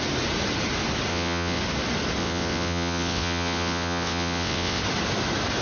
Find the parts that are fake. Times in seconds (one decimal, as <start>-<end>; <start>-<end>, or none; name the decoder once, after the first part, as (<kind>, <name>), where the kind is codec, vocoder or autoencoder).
1.1-1.6 (vocoder, WaveNeXt); 2.2-4.8